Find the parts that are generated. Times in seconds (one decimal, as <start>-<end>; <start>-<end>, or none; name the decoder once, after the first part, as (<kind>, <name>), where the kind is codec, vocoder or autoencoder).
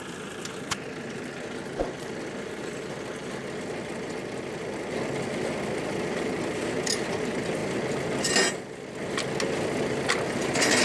none